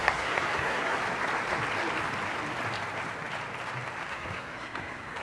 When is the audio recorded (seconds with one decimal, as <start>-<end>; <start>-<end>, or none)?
1.0-4.1